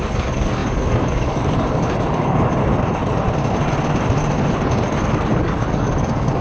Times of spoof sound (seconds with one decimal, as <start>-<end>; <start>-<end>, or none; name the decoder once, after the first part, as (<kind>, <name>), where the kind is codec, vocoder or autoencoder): 0.0-2.6 (codec, DAC); 5.3-6.4